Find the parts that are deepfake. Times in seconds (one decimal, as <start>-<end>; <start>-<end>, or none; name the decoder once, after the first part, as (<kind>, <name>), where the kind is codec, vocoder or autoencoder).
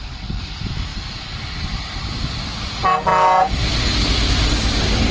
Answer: none